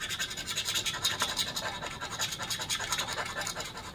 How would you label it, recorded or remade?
recorded